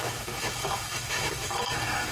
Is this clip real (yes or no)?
no